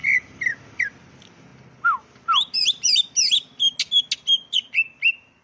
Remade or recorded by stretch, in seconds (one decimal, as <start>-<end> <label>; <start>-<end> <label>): 0.0-5.4 recorded